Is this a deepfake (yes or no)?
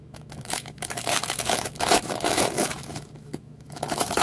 yes